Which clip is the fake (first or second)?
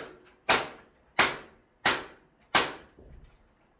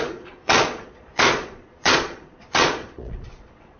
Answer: second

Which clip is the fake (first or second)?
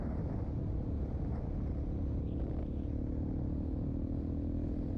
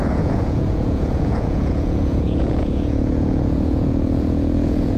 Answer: second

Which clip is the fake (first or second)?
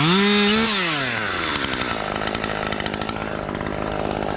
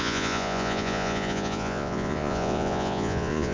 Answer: second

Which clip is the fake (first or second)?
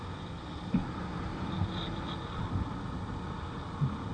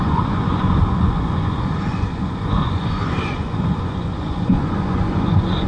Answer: second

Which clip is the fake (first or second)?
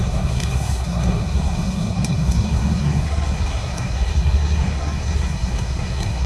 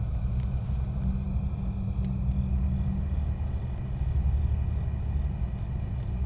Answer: first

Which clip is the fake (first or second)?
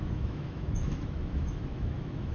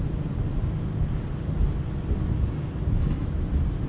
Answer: first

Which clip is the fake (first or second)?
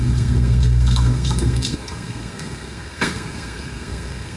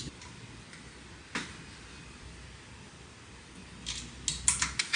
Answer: first